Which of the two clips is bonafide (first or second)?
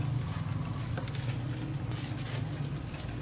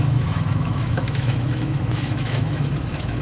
first